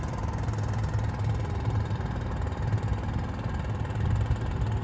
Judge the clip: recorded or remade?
recorded